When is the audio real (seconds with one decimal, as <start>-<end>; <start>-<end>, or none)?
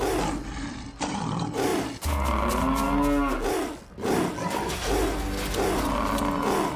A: 0.0-6.8